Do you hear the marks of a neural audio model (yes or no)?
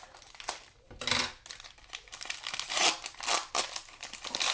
no